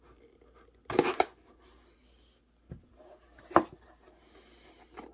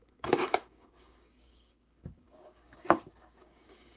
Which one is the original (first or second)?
first